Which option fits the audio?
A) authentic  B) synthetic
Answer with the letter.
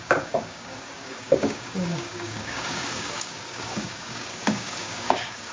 B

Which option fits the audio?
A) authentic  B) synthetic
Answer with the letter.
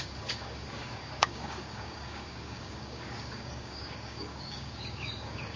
B